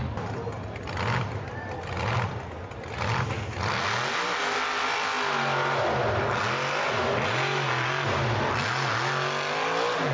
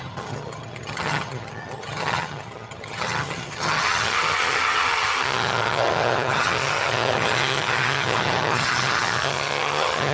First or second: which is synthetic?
second